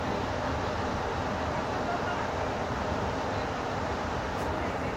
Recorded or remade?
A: recorded